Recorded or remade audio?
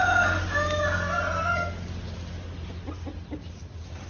recorded